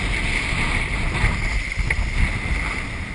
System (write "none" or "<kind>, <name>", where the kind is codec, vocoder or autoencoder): none